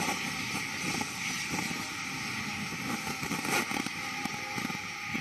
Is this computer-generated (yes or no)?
no